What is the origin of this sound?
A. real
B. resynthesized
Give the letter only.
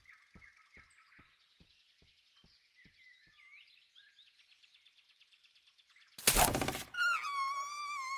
A